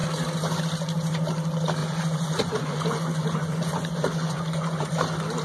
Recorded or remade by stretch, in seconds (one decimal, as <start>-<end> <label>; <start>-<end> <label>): 0.0-1.8 recorded; 1.8-4.9 remade; 4.9-5.4 recorded